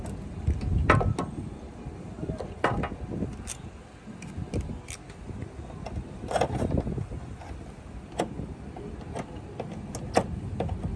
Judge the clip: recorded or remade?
recorded